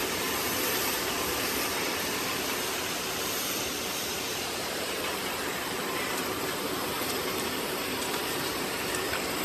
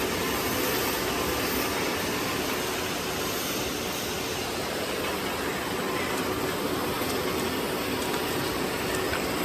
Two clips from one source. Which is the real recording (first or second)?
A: second